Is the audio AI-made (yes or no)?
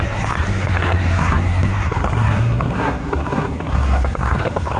yes